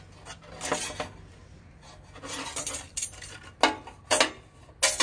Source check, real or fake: real